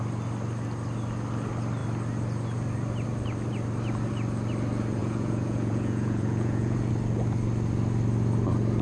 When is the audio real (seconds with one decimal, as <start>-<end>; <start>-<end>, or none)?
0.0-5.0; 6.9-8.8